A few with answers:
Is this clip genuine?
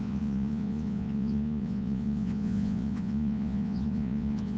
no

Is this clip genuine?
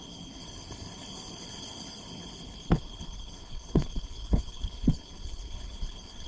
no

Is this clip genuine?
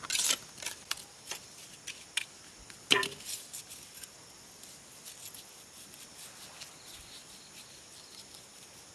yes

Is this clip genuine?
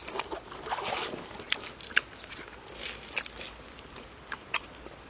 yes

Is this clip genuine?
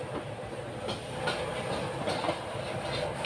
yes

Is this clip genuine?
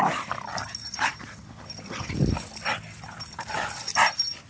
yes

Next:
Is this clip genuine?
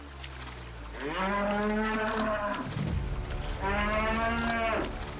yes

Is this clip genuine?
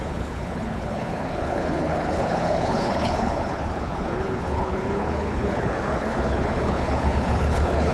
no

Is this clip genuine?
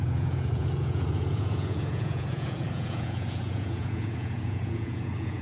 no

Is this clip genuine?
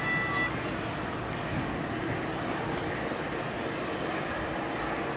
yes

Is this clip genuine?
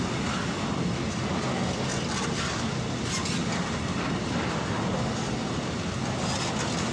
yes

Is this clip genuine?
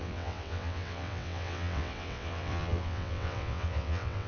no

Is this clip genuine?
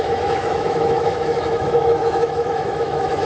no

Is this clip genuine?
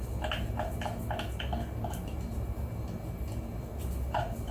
yes